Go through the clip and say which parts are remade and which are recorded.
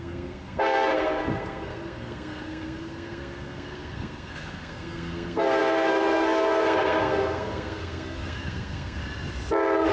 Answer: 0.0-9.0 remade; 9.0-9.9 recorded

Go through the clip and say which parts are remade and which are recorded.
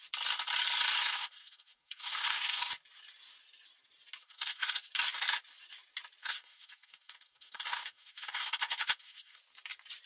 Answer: 0.0-1.0 recorded; 1.0-2.7 remade; 2.7-4.2 recorded; 4.2-4.9 remade; 4.9-6.2 recorded; 6.2-9.4 remade; 9.4-10.1 recorded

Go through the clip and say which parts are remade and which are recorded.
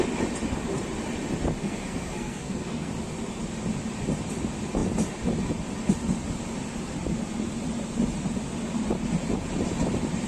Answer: 0.0-1.6 recorded; 1.6-2.9 remade; 2.9-10.3 recorded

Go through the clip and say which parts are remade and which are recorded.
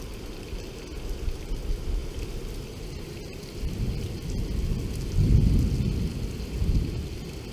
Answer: 0.0-7.5 recorded